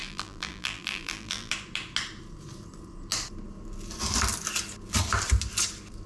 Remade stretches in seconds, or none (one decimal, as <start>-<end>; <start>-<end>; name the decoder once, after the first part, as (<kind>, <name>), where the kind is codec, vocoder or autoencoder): 0.0-1.5 (vocoder, BigVGAN v2)